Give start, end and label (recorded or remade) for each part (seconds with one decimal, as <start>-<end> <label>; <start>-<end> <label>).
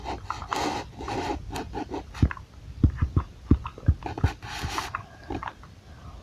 0.0-6.2 recorded